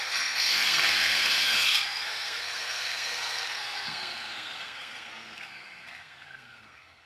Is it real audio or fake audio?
fake